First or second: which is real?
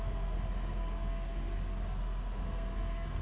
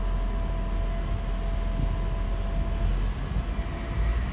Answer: second